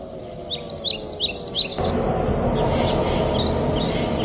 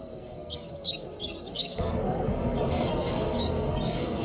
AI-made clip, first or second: second